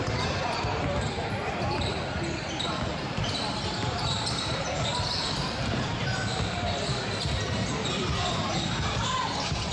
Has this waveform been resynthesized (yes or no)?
yes